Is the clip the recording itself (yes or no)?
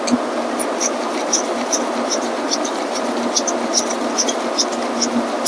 yes